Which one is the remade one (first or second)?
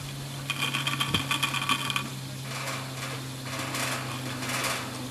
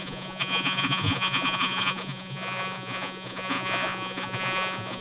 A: second